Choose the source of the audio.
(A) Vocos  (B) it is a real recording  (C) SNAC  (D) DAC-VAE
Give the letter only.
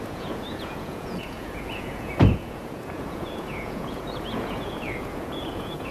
A